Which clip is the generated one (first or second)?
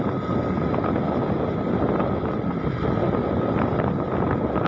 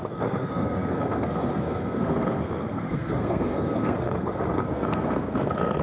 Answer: second